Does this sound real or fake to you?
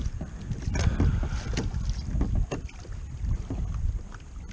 real